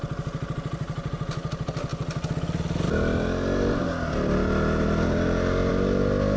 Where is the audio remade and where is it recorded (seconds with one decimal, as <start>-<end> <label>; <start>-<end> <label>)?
0.0-6.4 recorded